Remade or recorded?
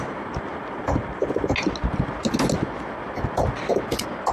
recorded